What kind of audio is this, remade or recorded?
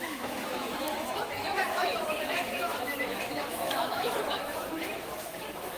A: remade